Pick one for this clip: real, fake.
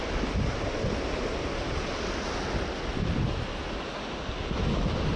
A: real